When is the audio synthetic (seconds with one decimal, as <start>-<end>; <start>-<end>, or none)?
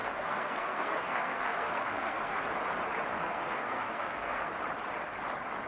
0.0-2.4; 3.1-4.5